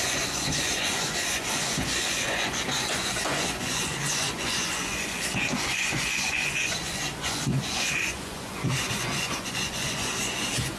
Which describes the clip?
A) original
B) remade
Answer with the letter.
B